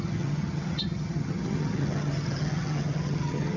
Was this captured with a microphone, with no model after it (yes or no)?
no